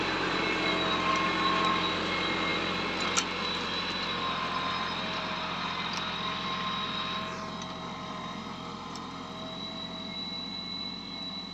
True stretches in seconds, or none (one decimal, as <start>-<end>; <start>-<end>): 0.0-11.5